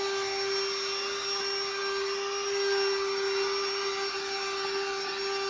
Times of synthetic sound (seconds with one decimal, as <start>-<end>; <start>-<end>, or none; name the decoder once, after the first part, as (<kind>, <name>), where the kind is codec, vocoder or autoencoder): none